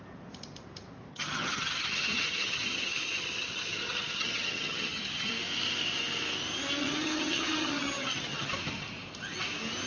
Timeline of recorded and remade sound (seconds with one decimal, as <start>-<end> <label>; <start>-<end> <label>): 0.0-1.1 recorded; 1.1-5.3 remade; 5.3-6.8 recorded; 6.8-8.5 remade; 8.5-9.9 recorded